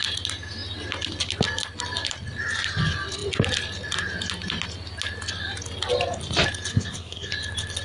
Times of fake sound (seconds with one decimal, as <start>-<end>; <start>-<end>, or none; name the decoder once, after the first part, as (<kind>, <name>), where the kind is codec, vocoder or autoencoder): 6.7-7.3 (codec, SNAC)